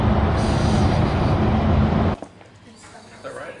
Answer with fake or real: real